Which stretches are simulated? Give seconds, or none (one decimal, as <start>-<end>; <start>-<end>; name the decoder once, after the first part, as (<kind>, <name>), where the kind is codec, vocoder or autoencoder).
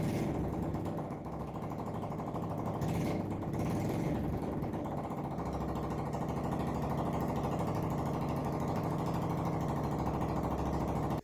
0.7-1.5 (autoencoder, DAC-VAE); 8.4-8.9